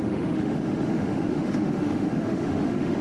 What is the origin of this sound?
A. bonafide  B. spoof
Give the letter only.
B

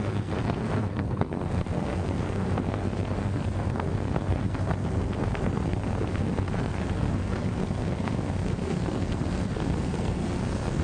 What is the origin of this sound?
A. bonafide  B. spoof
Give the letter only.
B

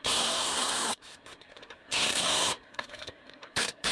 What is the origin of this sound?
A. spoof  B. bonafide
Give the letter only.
A